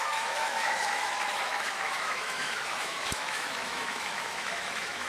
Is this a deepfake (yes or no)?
yes